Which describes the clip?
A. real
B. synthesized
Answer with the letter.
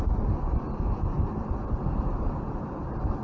A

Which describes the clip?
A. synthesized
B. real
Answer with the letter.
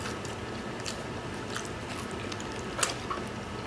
B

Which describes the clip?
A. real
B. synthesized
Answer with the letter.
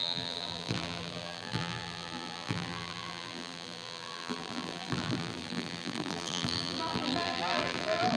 B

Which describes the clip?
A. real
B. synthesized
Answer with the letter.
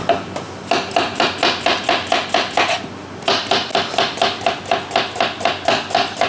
A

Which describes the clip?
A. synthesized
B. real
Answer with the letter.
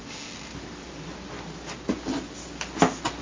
B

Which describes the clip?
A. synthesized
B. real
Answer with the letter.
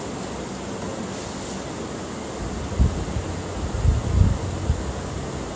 B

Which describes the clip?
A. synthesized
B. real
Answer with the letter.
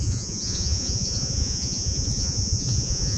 A